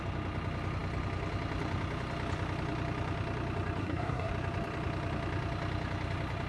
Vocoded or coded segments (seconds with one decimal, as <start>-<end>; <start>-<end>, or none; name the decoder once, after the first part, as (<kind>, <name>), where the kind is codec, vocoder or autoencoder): 3.8-4.3 (codec, SNAC)